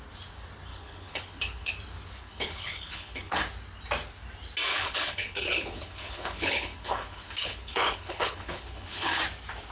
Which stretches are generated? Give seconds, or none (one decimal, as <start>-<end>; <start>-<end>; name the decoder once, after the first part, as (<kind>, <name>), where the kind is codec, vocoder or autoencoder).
0.7-1.7 (codec, HILCodec); 2.2-3.4; 4.7-9.2